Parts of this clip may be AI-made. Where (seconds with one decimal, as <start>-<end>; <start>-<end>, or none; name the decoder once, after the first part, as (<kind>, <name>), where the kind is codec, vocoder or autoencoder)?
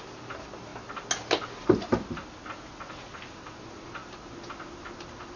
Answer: none